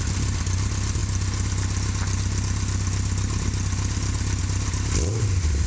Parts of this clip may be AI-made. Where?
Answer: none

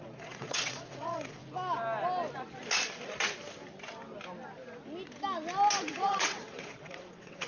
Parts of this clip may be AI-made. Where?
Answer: 0.0-1.4; 5.9-7.5